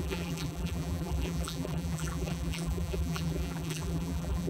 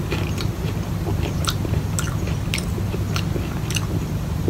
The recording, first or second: second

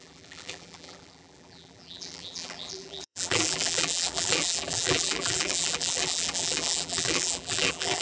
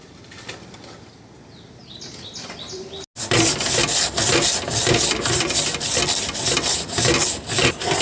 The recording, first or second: second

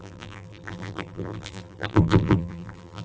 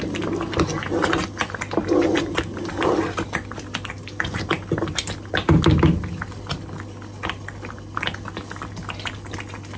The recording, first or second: second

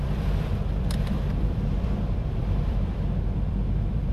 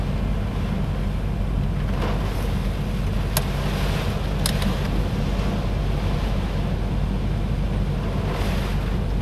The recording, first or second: second